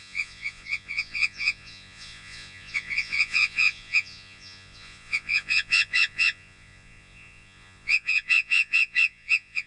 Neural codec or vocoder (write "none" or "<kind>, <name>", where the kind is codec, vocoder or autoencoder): vocoder, Vocos